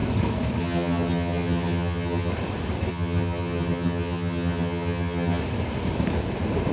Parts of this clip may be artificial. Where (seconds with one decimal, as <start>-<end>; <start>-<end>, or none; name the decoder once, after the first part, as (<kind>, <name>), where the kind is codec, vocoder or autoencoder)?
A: 0.6-2.3 (vocoder, HiFi-GAN); 2.9-5.4